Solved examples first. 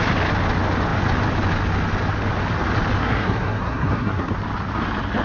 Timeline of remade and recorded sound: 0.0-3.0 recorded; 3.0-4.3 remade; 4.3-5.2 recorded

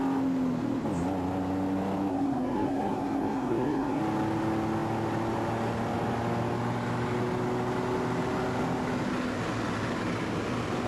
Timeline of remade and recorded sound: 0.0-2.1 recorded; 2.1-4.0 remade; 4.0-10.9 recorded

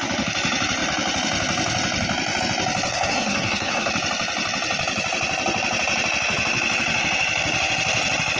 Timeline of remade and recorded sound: 0.0-2.9 recorded; 2.9-3.9 remade; 3.9-8.4 recorded

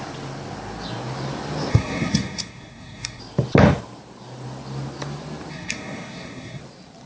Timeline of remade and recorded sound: 0.0-1.7 recorded; 1.7-3.2 remade; 3.2-5.5 recorded; 5.5-6.6 remade; 6.6-7.1 recorded

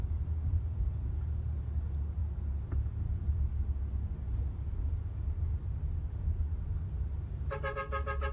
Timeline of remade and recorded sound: 0.0-8.3 recorded